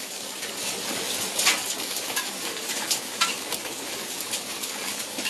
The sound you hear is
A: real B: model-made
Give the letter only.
B